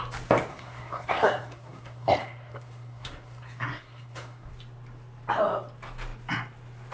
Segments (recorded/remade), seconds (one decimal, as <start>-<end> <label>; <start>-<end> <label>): 0.0-0.5 recorded; 0.5-4.5 remade; 4.5-6.9 recorded